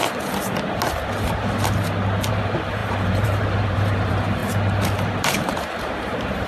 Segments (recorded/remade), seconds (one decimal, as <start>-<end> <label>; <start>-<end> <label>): 0.0-2.3 recorded; 2.3-4.4 remade; 4.4-5.2 recorded; 5.2-6.5 remade